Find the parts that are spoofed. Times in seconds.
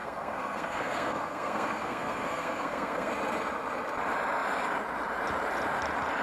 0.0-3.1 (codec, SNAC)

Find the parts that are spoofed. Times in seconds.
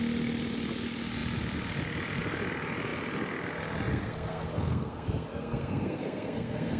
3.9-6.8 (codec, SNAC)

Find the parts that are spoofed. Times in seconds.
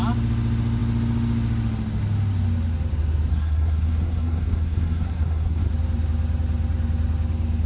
3.3-5.7 (codec, SNAC)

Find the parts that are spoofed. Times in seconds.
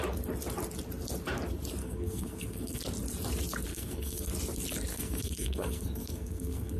1.8-2.8 (codec, SNAC); 3.7-4.3; 4.9-6.8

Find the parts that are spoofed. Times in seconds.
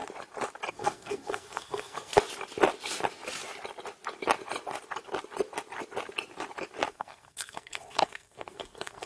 0.7-2.1 (codec, SNAC); 6.9-9.1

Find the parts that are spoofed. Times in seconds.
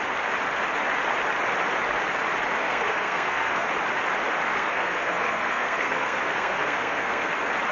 2.6-3.7 (codec, SNAC); 4.5-7.3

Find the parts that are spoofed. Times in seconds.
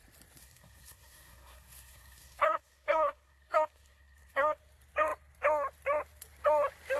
0.4-4.6 (codec, SNAC)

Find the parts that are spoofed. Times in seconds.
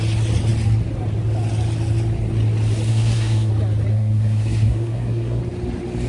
2.9-3.5 (codec, SNAC); 3.9-5.4